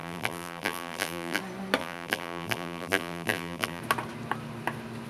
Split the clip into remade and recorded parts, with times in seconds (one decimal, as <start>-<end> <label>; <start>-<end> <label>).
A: 0.0-1.4 remade; 1.4-1.8 recorded; 1.8-3.8 remade; 3.8-5.1 recorded